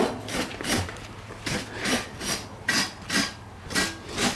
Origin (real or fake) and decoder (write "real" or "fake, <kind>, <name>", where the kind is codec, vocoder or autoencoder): real